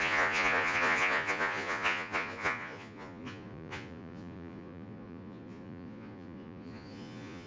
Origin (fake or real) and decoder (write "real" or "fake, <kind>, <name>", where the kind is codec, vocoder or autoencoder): fake, vocoder, Vocos